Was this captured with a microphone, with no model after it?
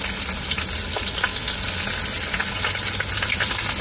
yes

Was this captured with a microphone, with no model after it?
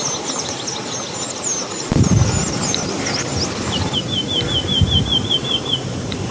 yes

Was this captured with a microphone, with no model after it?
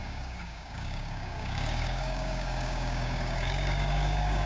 no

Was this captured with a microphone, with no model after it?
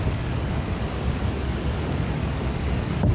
no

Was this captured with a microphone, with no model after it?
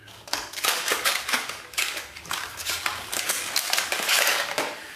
no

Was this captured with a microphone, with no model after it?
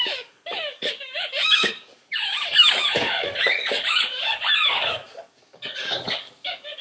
no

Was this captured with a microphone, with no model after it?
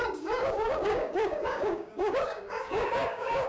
no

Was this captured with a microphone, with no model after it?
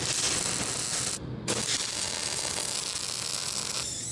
yes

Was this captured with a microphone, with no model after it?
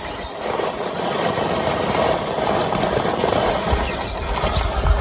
yes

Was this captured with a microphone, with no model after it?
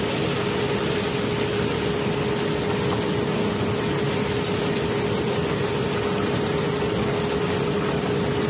yes